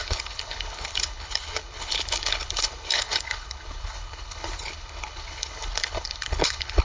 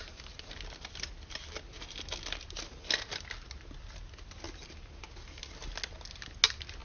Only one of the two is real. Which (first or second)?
second